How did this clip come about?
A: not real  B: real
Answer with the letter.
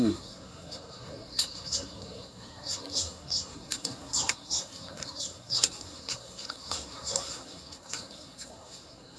A